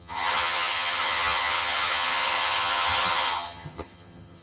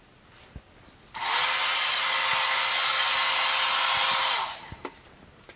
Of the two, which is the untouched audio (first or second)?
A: second